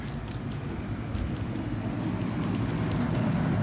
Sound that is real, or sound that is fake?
real